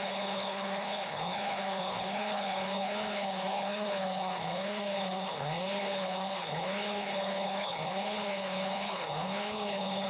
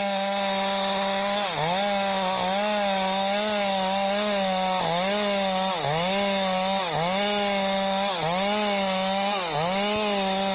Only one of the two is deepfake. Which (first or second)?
first